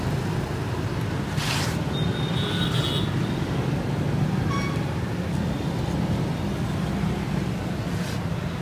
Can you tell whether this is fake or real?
real